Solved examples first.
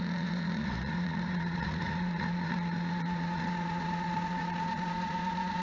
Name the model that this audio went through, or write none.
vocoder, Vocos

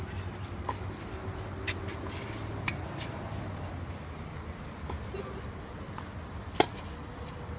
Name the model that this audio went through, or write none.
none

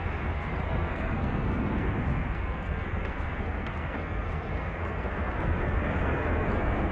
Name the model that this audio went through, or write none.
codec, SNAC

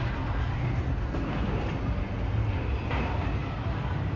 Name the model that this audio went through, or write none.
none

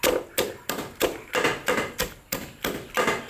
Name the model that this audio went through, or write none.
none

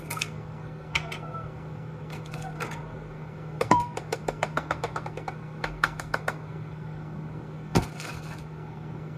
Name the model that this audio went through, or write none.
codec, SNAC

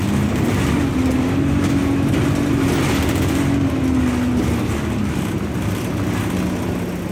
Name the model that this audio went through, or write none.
none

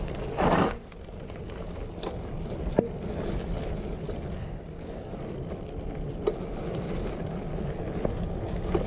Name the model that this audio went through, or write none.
none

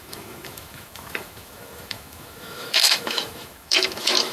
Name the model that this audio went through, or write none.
autoencoder, DAC-VAE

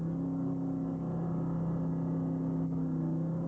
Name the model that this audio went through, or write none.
none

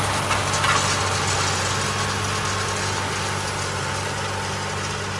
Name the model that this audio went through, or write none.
none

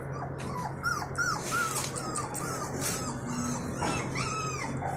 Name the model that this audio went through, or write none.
none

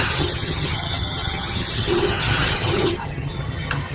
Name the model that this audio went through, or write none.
vocoder, HiFi-GAN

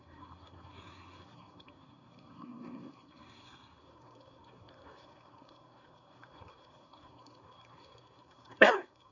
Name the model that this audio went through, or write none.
codec, SNAC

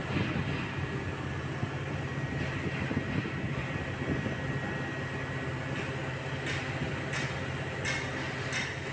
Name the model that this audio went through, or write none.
none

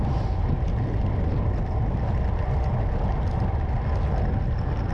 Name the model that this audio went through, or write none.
none